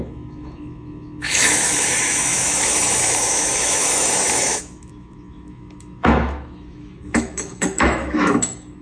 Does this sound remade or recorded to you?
remade